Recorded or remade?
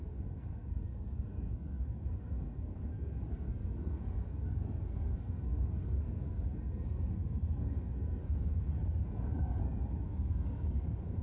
remade